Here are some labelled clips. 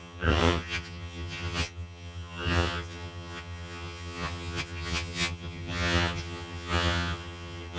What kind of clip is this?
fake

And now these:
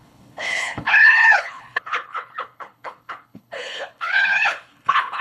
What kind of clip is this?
fake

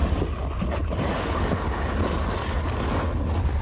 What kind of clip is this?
real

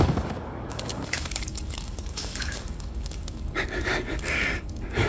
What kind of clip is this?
fake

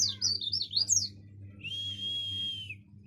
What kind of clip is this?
real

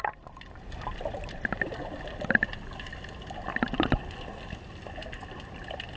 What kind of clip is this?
real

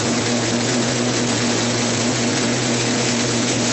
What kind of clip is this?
fake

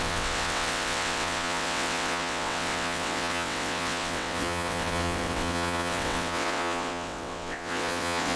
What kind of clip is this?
fake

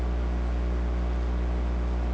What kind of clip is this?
real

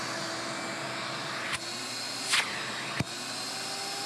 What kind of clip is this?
real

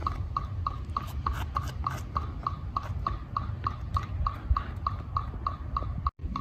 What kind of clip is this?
real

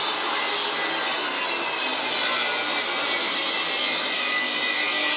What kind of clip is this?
real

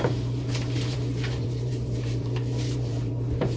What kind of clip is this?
fake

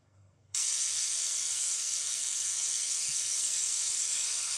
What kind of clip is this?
fake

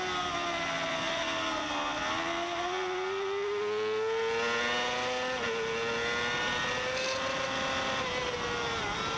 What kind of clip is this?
real